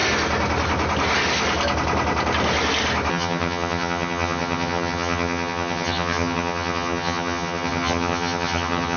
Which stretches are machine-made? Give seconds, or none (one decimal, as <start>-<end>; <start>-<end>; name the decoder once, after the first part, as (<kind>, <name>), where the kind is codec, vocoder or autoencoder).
3.1-9.0 (vocoder, HiFi-GAN)